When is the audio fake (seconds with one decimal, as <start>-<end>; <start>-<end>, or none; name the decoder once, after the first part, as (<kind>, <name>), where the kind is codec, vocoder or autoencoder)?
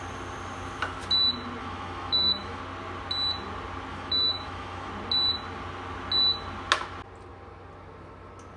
1.6-2.6 (autoencoder, DAC-VAE); 3.9-4.9